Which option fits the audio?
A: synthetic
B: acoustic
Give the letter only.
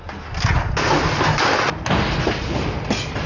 B